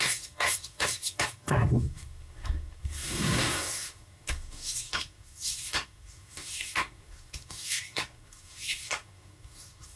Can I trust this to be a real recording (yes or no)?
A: no